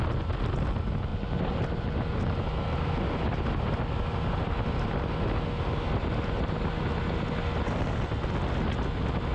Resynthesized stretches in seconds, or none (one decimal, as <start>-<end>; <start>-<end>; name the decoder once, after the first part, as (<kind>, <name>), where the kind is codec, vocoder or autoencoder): none